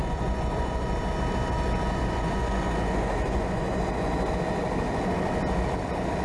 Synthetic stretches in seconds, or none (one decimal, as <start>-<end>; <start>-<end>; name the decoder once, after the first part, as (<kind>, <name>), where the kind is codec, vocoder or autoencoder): 0.0-0.9 (vocoder, Vocos); 2.0-4.3

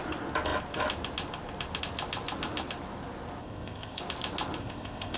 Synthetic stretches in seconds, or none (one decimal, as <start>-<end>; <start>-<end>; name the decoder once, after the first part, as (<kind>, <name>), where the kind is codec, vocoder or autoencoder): 3.4-4.0 (codec, ZipCodec); 4.6-5.2

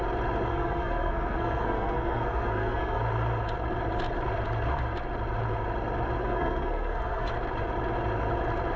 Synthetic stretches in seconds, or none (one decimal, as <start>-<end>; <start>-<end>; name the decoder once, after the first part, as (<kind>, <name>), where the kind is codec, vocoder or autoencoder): 0.5-3.0 (codec, SNAC); 6.2-7.3

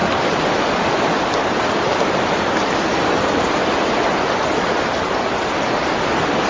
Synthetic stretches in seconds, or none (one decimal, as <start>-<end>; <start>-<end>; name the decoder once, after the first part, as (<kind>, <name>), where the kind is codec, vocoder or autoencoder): none

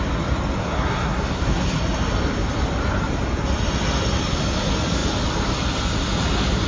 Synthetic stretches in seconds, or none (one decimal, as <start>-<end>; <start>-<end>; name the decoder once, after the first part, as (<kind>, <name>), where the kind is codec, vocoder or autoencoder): 0.6-1.8 (codec, SNAC)

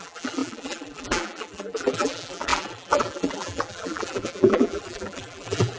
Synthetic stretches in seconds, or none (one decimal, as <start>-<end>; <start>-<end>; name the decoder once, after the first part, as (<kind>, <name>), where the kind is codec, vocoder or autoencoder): 0.0-5.8 (vocoder, BigVGAN v2)

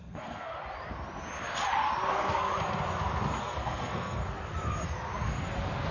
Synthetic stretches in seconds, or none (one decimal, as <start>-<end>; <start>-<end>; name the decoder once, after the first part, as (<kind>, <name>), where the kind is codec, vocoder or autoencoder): 0.0-0.5 (codec, SNAC); 2.1-2.5; 3.4-4.2

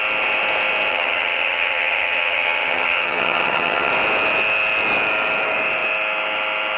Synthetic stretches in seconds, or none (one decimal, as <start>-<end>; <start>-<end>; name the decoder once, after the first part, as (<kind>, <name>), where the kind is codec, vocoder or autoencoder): 0.9-3.9 (vocoder, HiFi-GAN)